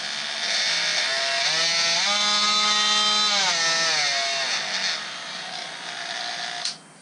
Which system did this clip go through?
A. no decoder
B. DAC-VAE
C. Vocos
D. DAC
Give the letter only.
A